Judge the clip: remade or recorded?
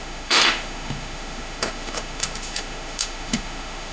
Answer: remade